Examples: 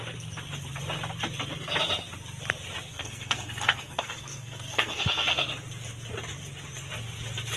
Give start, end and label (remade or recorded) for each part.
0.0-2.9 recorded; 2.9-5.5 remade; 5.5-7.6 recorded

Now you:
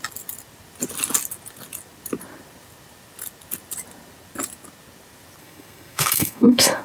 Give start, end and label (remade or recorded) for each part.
0.0-5.4 recorded; 5.4-6.8 remade

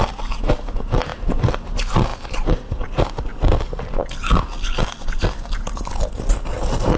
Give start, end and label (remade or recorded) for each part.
0.0-7.0 recorded

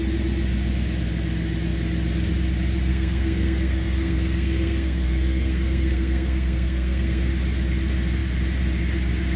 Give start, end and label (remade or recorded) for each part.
0.0-2.9 recorded; 2.9-7.3 remade; 7.3-9.4 recorded